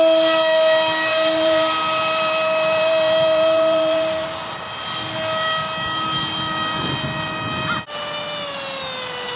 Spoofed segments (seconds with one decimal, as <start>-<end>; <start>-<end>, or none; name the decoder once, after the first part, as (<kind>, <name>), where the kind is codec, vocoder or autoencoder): 1.1-4.6 (vocoder, BigVGAN v2)